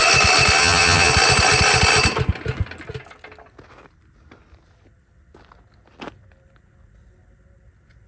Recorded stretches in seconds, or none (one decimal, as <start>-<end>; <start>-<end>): 0.0-0.6; 1.1-8.1